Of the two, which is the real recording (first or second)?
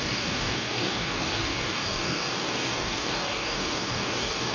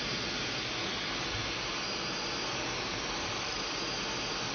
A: second